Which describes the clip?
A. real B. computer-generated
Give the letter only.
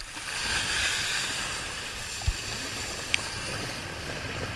A